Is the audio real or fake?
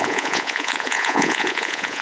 fake